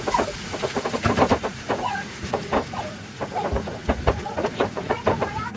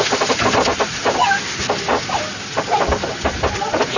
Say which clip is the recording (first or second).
second